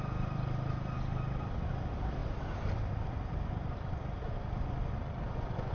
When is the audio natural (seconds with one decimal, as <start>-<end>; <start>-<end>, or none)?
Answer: 0.0-5.7